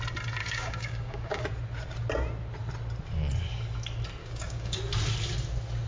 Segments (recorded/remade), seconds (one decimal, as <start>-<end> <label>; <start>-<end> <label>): 0.0-0.4 recorded; 0.4-1.4 remade; 1.4-4.2 recorded; 4.2-4.8 remade; 4.8-5.9 recorded

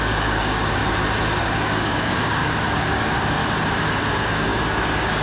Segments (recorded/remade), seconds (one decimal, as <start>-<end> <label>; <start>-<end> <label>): 0.0-0.8 remade; 0.8-1.4 recorded; 1.4-3.4 remade; 3.4-4.1 recorded; 4.1-5.2 remade

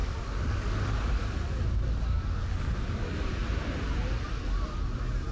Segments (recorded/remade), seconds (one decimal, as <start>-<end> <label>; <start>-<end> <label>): 0.0-3.2 remade; 3.2-5.3 recorded

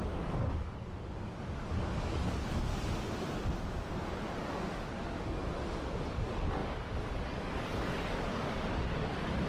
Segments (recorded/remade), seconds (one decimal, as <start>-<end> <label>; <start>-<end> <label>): 0.0-2.7 remade; 2.7-4.4 recorded; 4.4-5.4 remade; 5.4-6.0 recorded; 6.0-9.5 remade

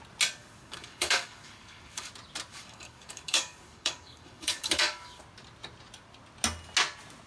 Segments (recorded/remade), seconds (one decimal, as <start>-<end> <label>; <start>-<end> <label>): 0.0-0.4 recorded; 0.4-2.1 remade; 2.1-2.5 recorded; 2.5-5.2 remade; 5.2-7.3 recorded

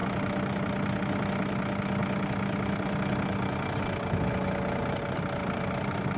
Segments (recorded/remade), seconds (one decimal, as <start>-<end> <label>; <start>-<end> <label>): 0.0-6.2 recorded